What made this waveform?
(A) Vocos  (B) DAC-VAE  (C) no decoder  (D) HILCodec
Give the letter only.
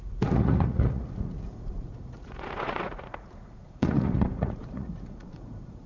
A